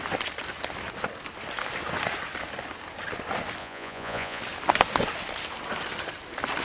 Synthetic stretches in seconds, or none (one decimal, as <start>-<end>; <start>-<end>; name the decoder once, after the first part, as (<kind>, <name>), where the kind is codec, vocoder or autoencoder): 3.6-4.4 (vocoder, Vocos)